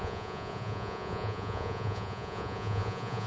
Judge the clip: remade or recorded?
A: remade